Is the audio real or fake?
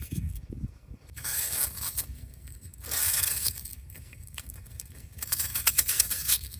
fake